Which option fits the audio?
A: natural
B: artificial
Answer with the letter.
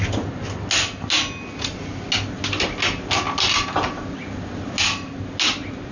A